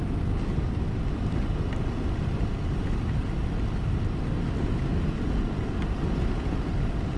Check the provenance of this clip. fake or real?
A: real